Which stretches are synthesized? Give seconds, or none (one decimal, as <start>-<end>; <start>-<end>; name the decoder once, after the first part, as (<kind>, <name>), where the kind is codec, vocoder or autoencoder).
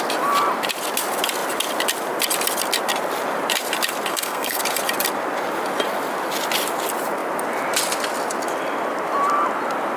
4.1-4.6 (codec, SNAC)